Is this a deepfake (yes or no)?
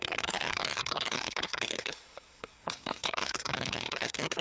yes